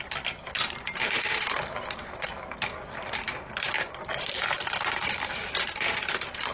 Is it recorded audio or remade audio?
recorded